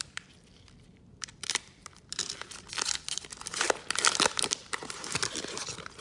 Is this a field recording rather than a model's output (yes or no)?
no